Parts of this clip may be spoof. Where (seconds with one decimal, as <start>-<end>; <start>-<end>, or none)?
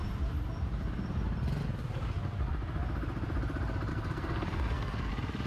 3.9-5.1